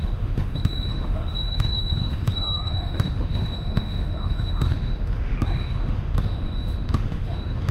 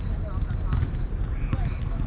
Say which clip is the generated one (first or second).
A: first